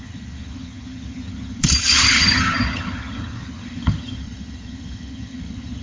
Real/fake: fake